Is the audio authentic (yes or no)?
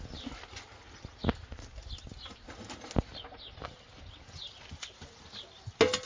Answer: yes